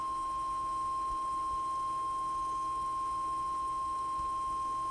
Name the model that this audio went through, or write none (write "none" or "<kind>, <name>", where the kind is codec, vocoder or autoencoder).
autoencoder, DAC-VAE